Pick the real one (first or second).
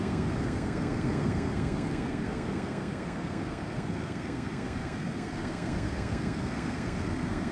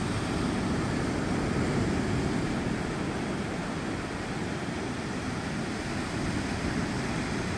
second